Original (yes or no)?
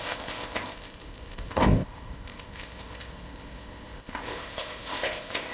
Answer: no